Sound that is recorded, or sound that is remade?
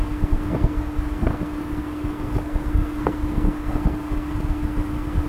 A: remade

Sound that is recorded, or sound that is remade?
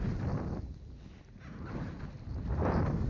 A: recorded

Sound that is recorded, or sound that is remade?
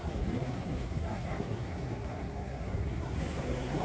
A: remade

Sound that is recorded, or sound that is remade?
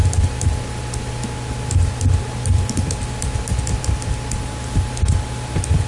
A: recorded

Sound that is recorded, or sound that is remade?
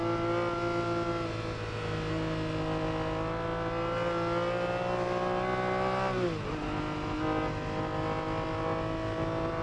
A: recorded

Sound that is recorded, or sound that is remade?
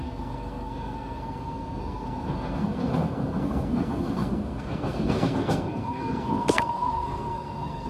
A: remade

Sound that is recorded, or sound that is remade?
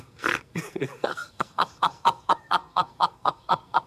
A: remade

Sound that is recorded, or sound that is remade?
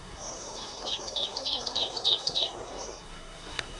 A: remade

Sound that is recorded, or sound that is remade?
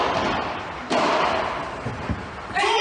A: recorded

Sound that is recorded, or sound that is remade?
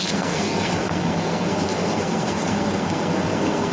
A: remade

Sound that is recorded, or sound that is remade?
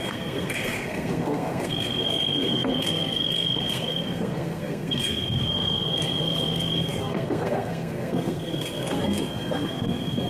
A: remade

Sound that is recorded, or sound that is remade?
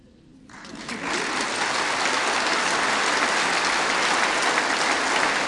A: recorded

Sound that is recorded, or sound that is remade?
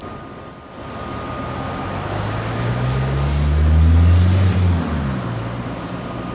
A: recorded